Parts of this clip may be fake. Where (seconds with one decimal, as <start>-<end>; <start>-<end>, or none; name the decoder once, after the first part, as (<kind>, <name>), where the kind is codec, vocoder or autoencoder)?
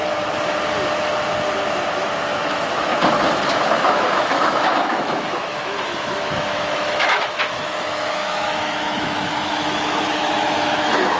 2.4-2.9 (autoencoder, DAC-VAE); 3.5-11.2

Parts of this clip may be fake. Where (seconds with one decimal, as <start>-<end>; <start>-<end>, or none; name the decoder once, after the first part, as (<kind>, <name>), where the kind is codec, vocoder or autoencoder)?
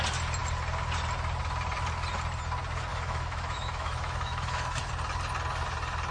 2.9-4.9 (autoencoder, DAC-VAE)